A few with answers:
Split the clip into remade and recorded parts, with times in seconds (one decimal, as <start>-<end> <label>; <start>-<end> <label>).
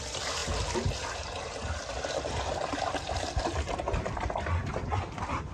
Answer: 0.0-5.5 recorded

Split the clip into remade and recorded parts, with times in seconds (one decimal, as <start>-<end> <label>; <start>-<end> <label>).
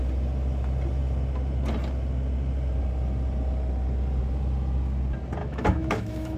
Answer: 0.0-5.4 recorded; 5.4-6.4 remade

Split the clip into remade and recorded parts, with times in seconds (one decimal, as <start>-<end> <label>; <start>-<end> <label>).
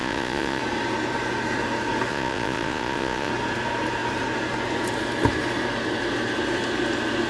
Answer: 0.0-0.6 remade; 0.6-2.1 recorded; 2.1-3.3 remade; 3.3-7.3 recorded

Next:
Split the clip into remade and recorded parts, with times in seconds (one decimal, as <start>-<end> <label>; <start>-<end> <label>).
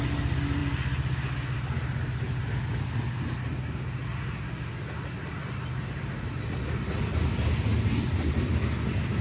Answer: 0.0-9.2 recorded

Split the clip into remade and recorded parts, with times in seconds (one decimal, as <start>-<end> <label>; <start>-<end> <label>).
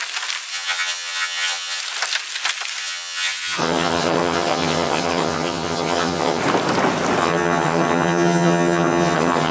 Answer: 0.0-0.5 recorded; 0.5-1.8 remade; 1.8-2.8 recorded; 2.8-6.4 remade; 6.4-7.2 recorded; 7.2-9.5 remade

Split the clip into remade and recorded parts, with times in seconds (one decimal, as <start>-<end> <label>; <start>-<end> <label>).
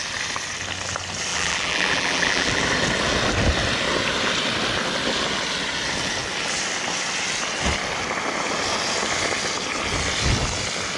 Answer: 0.0-1.3 recorded; 1.3-2.6 remade; 2.6-11.0 recorded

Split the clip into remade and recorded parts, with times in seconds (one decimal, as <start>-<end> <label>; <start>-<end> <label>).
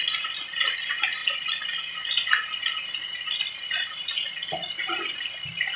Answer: 0.0-5.8 recorded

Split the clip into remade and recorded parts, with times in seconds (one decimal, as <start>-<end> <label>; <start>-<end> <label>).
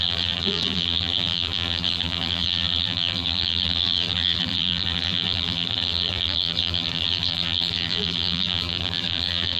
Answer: 0.0-9.6 remade